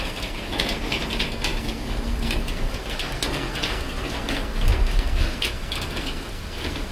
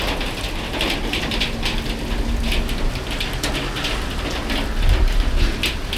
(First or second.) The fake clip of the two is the first